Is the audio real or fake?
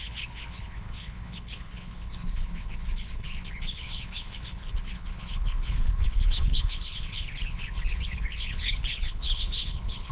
fake